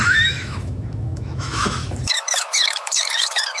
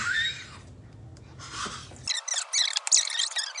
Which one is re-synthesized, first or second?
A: first